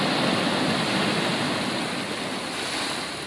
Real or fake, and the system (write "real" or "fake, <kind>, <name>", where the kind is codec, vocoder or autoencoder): real